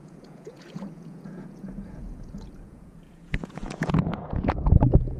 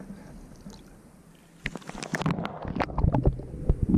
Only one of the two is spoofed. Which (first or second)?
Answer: first